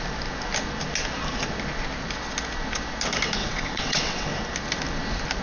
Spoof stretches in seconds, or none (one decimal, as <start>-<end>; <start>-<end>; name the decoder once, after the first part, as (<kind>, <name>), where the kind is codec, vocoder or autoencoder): 3.4-4.3 (vocoder, WaveNeXt)